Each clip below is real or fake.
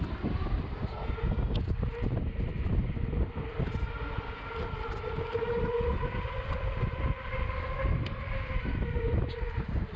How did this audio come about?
real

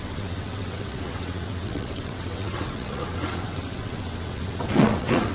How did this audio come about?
fake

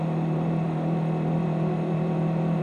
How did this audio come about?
fake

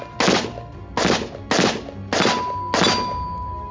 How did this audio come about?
real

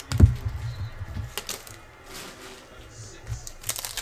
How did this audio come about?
real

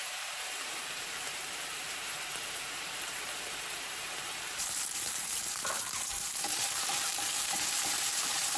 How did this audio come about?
fake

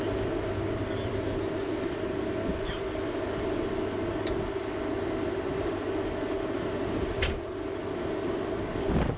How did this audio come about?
real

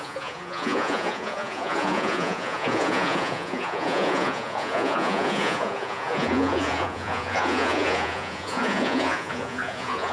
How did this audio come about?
fake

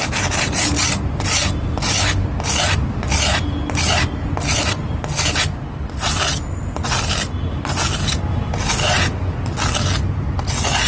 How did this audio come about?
real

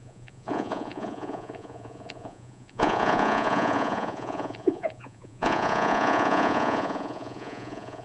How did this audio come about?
fake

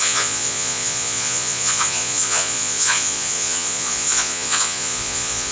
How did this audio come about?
fake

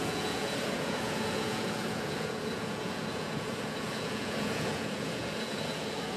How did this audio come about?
fake